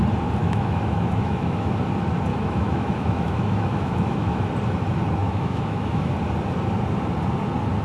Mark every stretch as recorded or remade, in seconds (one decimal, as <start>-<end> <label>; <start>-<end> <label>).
0.0-0.4 recorded; 0.4-1.8 remade; 1.8-2.3 recorded; 2.3-4.4 remade; 4.4-5.2 recorded; 5.2-6.1 remade; 6.1-7.8 recorded